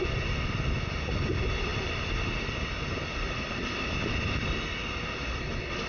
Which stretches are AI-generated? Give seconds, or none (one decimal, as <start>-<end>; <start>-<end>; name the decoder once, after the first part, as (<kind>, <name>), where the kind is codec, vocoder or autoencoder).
none